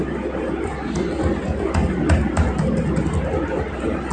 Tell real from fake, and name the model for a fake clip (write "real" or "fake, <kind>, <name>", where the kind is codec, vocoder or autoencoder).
real